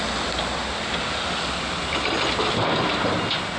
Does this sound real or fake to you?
real